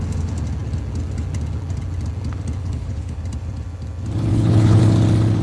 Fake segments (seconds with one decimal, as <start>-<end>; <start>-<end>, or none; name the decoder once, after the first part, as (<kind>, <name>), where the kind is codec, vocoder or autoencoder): 2.6-3.2 (codec, HILCodec); 4.3-4.8